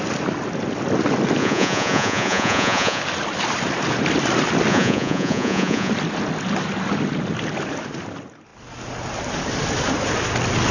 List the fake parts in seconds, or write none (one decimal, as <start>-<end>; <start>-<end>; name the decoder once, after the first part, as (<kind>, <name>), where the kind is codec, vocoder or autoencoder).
1.4-3.0 (vocoder, Vocos); 4.7-5.9